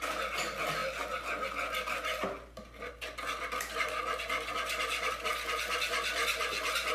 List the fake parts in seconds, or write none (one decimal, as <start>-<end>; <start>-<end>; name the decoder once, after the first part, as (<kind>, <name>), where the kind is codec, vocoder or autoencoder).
none

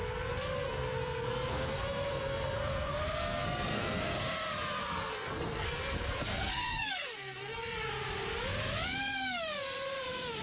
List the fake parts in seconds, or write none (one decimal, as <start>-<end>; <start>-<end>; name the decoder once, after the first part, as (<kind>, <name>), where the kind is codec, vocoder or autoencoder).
0.0-4.2 (codec, SNAC); 4.8-7.9

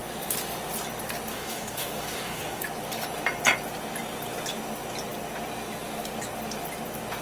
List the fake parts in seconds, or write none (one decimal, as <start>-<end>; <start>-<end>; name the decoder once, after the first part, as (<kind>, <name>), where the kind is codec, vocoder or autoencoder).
1.3-2.6 (codec, DAC)

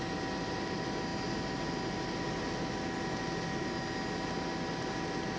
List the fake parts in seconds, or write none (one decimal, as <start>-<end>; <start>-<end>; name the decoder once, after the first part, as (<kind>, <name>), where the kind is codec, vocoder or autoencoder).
none

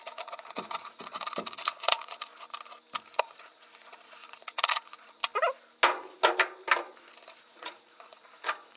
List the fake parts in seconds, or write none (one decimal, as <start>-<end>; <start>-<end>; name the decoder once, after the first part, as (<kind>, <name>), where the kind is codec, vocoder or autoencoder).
0.0-2.3 (vocoder, Vocos); 3.2-5.2; 7.4-8.8

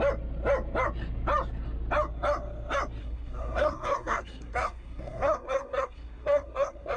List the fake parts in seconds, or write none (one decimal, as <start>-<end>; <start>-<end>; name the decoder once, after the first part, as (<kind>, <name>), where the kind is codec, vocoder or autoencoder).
3.0-7.0 (codec, SNAC)